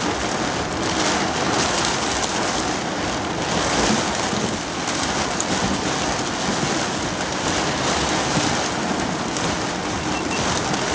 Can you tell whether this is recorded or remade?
recorded